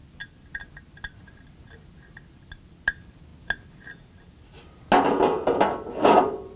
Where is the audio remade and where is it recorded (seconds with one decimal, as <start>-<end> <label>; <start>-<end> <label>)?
0.0-3.3 remade; 3.3-6.0 recorded; 6.0-6.6 remade